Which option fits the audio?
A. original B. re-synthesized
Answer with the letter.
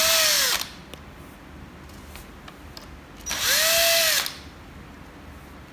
A